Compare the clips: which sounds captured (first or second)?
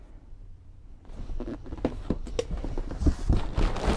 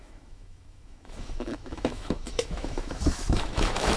first